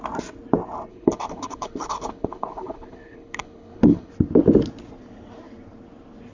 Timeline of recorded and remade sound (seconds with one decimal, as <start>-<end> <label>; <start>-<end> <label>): 0.0-0.9 recorded; 0.9-4.1 remade; 4.1-6.3 recorded